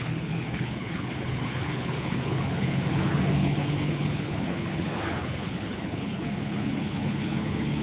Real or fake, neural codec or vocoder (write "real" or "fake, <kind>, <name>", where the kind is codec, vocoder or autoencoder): fake, codec, HILCodec